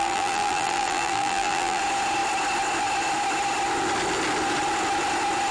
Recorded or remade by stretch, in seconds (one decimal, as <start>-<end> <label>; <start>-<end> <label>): 0.0-1.8 remade; 1.8-5.5 recorded